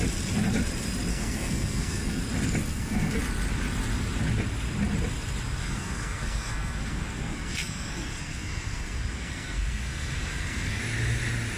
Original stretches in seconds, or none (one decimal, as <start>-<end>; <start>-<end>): 0.0-1.1; 2.2-2.7; 3.2-5.6; 10.8-11.6